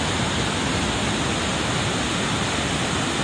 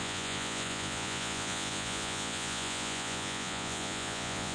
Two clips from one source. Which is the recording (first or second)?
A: first